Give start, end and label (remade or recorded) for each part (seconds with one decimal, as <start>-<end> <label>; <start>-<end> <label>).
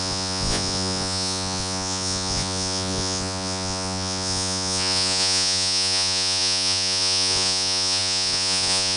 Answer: 0.0-9.0 remade